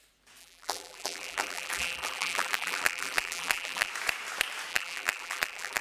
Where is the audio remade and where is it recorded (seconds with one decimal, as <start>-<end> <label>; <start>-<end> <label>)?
0.0-0.4 recorded; 0.4-3.9 remade; 3.9-4.7 recorded; 4.7-5.8 remade